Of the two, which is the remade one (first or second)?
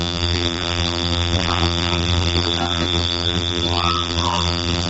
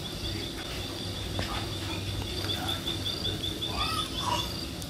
first